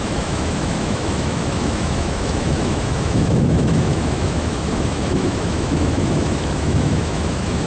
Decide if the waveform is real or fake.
fake